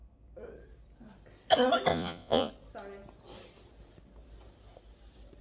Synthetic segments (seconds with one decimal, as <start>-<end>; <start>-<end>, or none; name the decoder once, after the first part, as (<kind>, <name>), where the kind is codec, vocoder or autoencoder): 1.9-2.5 (vocoder, Vocos)